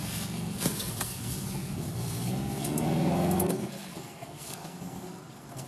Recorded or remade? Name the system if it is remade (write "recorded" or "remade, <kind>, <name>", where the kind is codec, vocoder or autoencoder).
remade, codec, SNAC